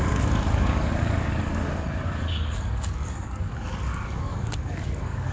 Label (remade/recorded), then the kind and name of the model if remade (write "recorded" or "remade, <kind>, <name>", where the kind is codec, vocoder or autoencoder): remade, codec, DAC